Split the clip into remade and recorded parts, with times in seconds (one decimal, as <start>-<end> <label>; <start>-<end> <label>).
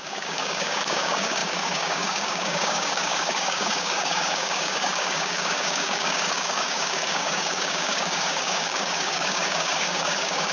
0.0-10.5 remade